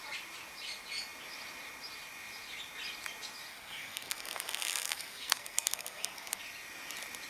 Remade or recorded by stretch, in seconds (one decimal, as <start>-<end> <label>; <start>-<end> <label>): 0.0-3.5 recorded; 3.5-6.4 remade; 6.4-7.3 recorded